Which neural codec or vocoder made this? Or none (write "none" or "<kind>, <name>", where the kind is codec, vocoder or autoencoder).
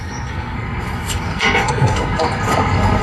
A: codec, SNAC